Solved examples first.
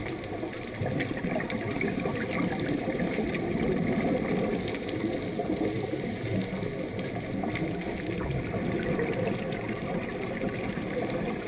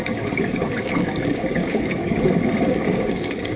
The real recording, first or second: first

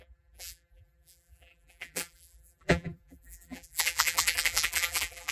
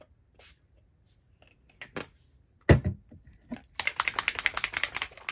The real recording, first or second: second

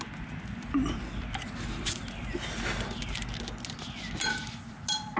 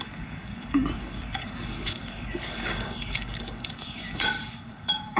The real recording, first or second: first